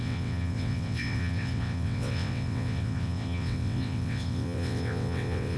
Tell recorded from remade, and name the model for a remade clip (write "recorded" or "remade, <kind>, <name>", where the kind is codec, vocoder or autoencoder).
remade, vocoder, WaveNeXt